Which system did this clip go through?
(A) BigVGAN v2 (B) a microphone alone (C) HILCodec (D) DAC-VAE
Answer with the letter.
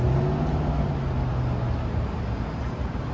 B